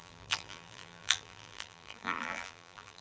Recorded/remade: remade